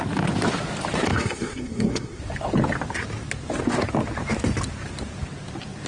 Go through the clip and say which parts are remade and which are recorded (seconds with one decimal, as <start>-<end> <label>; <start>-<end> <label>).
0.0-1.1 recorded; 1.1-2.2 remade; 2.2-5.9 recorded